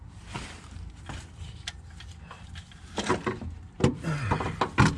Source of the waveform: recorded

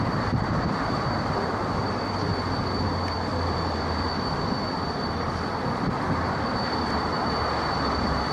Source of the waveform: remade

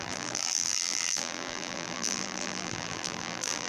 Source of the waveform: remade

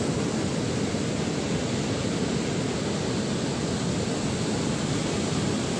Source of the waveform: recorded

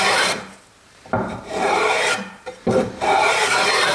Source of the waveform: remade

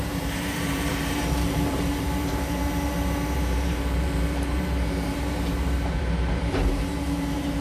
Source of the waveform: remade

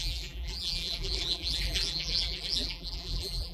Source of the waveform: remade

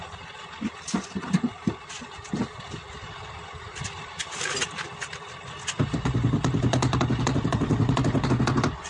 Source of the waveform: recorded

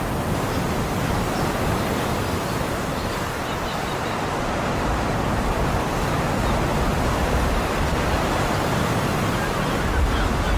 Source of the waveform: recorded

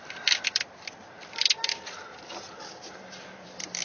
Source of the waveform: remade